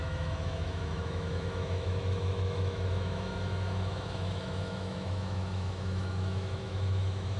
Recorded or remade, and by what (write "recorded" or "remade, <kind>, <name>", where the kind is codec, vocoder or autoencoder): remade, autoencoder, DAC-VAE